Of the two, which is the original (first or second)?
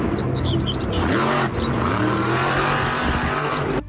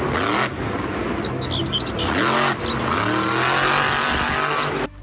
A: second